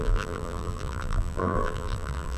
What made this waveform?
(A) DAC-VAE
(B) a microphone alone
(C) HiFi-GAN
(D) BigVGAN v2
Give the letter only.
D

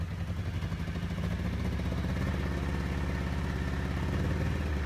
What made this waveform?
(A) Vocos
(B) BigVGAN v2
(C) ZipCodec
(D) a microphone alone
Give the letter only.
D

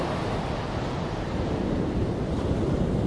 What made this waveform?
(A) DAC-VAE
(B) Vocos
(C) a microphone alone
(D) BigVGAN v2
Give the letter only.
C